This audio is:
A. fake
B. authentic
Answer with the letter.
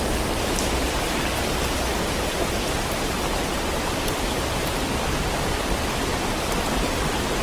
B